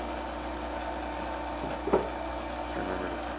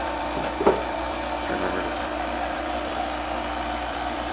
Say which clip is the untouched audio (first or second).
first